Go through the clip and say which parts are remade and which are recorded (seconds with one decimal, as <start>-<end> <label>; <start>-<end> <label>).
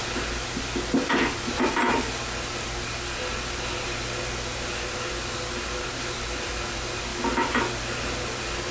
0.0-8.7 recorded